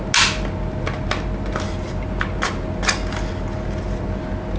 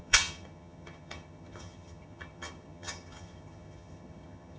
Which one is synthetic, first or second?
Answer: second